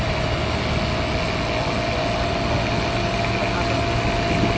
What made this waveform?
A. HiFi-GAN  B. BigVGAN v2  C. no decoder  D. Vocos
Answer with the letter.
C